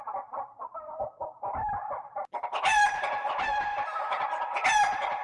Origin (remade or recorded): remade